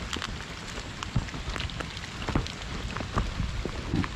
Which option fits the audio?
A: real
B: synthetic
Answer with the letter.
A